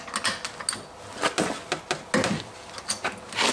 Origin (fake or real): real